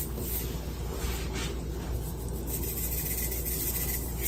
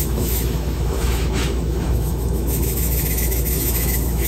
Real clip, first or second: first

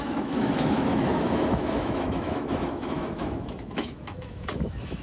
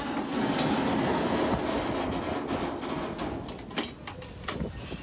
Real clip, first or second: second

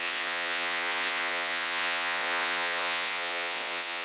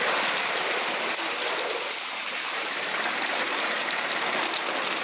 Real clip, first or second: second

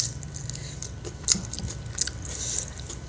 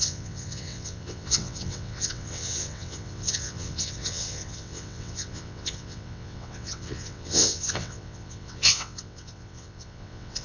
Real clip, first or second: first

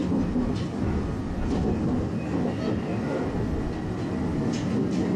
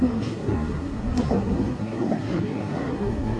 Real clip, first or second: first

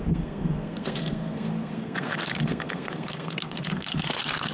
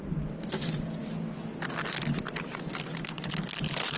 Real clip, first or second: second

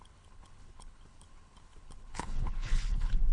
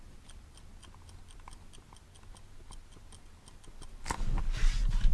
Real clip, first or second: second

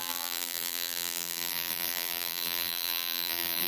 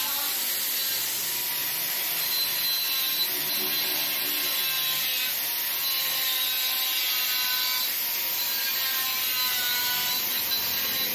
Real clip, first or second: second